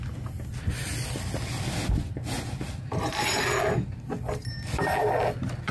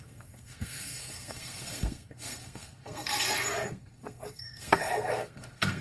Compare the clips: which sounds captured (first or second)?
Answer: first